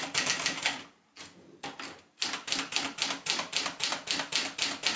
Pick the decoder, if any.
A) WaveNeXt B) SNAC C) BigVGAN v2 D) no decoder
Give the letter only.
D